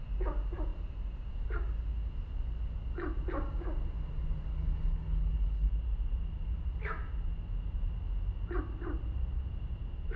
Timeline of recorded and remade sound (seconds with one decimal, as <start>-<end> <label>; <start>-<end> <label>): 0.0-4.5 recorded; 4.5-5.7 remade; 5.7-10.2 recorded